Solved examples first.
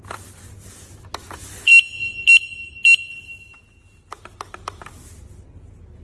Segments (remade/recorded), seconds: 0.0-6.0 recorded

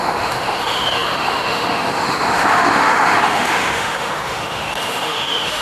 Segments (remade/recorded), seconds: 0.0-5.6 remade

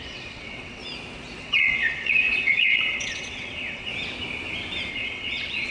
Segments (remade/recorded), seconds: 0.0-0.8 remade; 0.8-1.4 recorded; 1.4-3.9 remade; 3.9-4.9 recorded; 4.9-5.7 remade

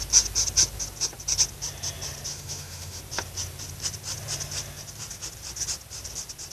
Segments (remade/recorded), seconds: 0.0-2.3 recorded; 2.3-3.0 remade; 3.0-6.5 recorded

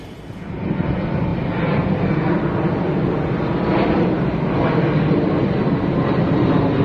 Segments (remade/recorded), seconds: 0.0-6.8 recorded